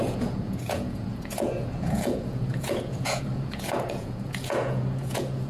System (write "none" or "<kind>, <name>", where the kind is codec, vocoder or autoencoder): vocoder, Vocos